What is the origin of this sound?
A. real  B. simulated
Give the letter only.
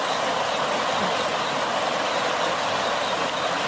A